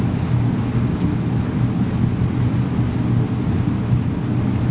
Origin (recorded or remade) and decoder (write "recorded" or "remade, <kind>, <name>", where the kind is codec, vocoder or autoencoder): recorded